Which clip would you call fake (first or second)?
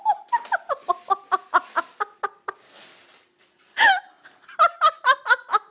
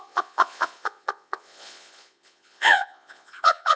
second